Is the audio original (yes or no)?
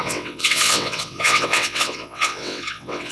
no